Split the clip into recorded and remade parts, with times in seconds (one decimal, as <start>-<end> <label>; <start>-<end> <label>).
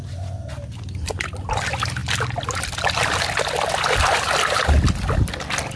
0.0-5.8 recorded